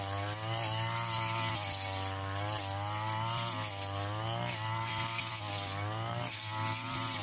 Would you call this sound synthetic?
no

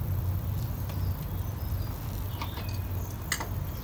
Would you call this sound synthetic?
no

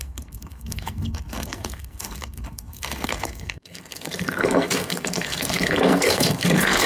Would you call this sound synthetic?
yes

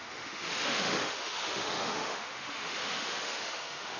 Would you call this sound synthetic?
yes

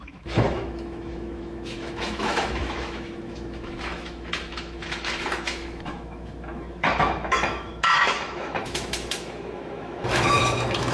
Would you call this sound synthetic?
yes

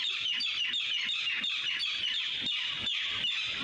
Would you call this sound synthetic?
no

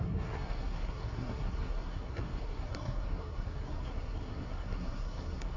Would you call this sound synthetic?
yes